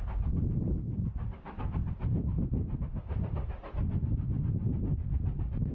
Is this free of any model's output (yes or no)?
yes